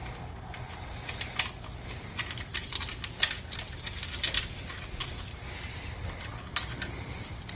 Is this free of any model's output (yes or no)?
yes